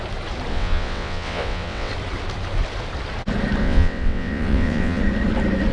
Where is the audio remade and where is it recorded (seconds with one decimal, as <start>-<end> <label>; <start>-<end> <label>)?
0.0-0.5 recorded; 0.5-1.9 remade; 1.9-3.6 recorded; 3.6-5.0 remade; 5.0-5.7 recorded